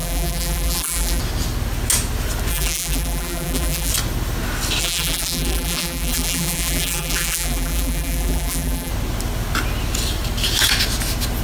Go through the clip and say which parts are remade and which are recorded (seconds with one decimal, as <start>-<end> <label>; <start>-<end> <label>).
0.0-1.2 remade; 1.2-2.5 recorded; 2.5-3.9 remade; 3.9-4.8 recorded; 4.8-8.9 remade; 8.9-11.4 recorded